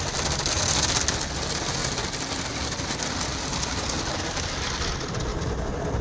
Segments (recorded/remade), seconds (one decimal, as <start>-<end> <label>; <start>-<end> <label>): 0.0-6.0 recorded